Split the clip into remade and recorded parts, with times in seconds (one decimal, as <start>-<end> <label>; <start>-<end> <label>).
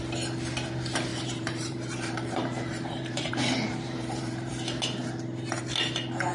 0.0-1.1 recorded; 1.1-3.3 remade; 3.3-3.7 recorded; 3.7-4.5 remade; 4.5-6.3 recorded